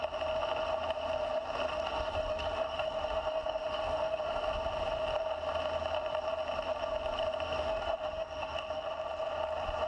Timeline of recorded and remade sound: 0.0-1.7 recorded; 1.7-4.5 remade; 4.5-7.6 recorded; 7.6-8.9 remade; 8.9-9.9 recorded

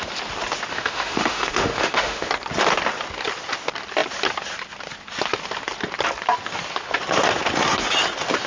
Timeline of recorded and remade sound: 0.0-0.7 recorded; 0.7-2.3 remade; 2.3-8.5 recorded

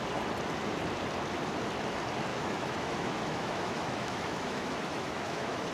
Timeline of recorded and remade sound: 0.0-2.3 recorded; 2.3-5.7 remade

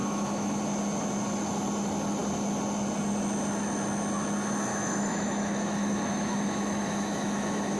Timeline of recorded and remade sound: 0.0-0.6 remade; 0.6-4.7 recorded; 4.7-7.8 remade

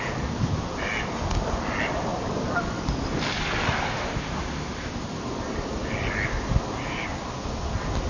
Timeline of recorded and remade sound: 0.0-3.9 recorded; 3.9-4.9 remade; 4.9-8.1 recorded